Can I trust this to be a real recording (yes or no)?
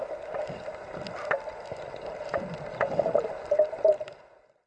yes